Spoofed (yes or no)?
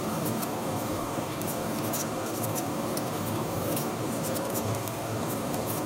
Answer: yes